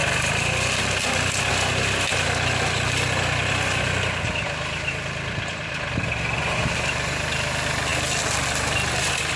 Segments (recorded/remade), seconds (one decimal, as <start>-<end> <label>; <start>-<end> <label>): 0.0-9.4 recorded

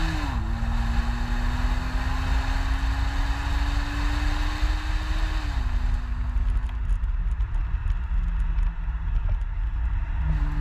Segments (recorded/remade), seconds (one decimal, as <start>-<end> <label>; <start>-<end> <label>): 0.0-10.6 recorded

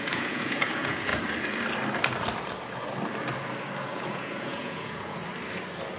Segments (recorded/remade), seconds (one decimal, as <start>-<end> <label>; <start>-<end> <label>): 0.0-1.1 remade; 1.1-3.8 recorded; 3.8-5.2 remade; 5.2-6.0 recorded

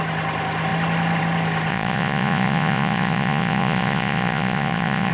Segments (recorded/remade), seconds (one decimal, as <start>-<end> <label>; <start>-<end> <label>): 0.0-1.7 recorded; 1.7-5.1 remade